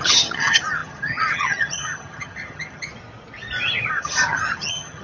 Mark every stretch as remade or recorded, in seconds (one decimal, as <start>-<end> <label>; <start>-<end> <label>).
0.0-2.9 remade; 2.9-3.9 recorded; 3.9-5.0 remade